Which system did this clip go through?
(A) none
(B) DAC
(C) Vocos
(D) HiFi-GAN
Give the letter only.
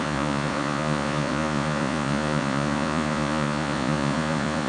C